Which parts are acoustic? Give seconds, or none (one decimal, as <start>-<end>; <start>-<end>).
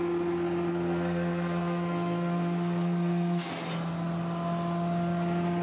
0.0-0.7; 3.5-5.6